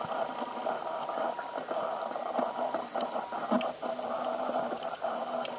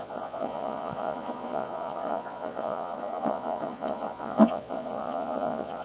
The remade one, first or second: second